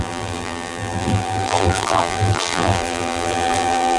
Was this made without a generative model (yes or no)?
no